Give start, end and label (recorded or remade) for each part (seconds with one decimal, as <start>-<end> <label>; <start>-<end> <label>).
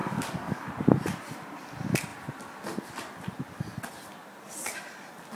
0.0-0.7 remade; 0.7-5.3 recorded